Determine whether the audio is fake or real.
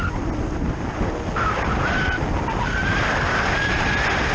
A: real